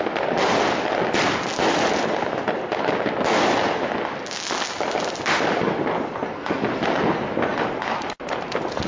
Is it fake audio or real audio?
real